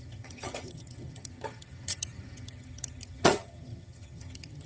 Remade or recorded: remade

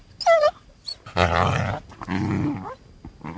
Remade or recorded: recorded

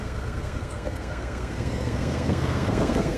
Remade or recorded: remade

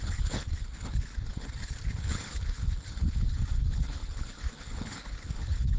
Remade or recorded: remade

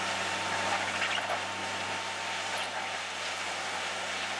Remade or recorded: recorded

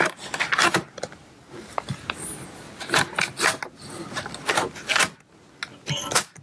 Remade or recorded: recorded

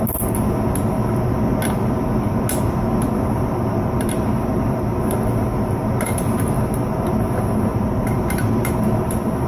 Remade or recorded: recorded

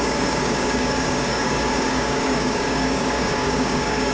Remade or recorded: remade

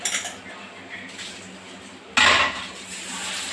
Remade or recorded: recorded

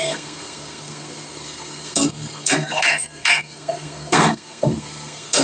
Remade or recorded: remade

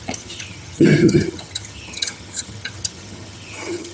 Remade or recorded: remade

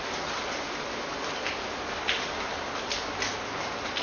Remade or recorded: recorded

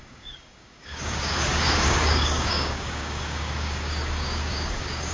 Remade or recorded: remade